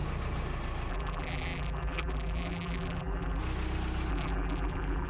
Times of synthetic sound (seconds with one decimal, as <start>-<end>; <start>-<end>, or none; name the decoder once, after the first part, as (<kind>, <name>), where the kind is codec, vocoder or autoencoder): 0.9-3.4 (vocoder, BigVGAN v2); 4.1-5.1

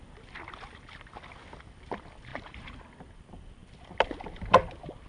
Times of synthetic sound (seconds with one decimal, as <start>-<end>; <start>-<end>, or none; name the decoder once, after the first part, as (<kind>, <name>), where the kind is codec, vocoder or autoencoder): 2.3-2.8 (vocoder, BigVGAN v2)

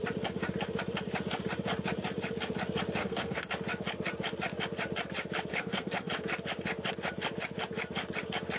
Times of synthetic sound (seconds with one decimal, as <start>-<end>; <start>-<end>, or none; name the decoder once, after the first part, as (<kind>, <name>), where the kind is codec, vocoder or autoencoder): 3.0-3.5 (codec, SNAC); 5.5-6.1

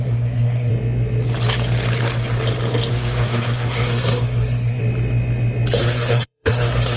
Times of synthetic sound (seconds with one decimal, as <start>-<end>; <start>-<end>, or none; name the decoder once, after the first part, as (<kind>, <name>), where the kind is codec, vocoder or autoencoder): 0.0-0.7 (codec, SNAC); 2.9-4.8; 5.8-7.0

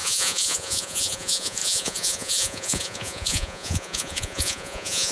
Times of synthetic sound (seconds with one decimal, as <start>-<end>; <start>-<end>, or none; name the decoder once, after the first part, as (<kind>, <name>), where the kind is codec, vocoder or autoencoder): 0.0-5.1 (vocoder, Vocos)

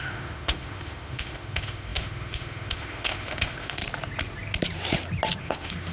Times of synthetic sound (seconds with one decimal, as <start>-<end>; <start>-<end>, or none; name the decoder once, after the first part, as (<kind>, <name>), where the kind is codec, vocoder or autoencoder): 0.0-3.8 (autoencoder, DAC-VAE); 5.4-5.9

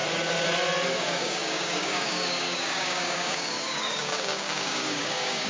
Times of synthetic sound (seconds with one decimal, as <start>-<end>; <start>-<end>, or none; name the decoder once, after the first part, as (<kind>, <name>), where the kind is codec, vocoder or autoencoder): 0.9-5.5 (codec, DAC)